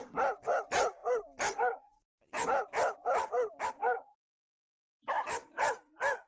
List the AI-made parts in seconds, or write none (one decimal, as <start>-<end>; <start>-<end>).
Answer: none